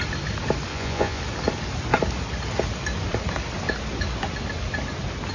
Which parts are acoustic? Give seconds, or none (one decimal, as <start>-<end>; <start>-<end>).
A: 0.0-0.7; 1.2-5.3